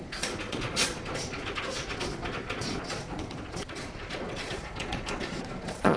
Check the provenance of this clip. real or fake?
fake